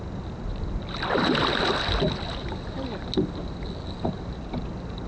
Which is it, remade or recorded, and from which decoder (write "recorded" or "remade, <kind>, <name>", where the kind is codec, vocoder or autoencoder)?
recorded